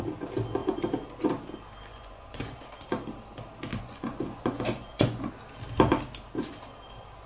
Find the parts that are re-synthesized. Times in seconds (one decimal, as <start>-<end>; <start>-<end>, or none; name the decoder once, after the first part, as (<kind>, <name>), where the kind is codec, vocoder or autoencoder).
1.9-2.6 (vocoder, Vocos); 3.7-5.3